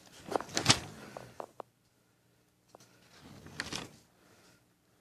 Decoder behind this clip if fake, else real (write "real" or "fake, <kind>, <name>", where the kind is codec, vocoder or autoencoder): real